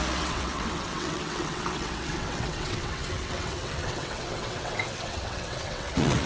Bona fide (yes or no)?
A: no